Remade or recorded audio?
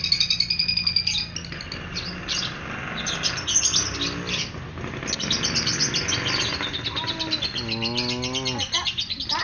recorded